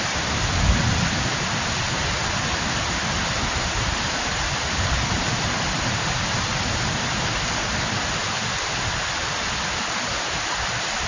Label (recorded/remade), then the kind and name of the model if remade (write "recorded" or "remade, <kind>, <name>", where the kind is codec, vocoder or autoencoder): recorded